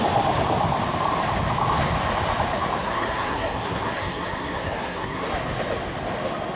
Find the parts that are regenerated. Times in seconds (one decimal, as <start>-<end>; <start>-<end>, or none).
2.8-5.3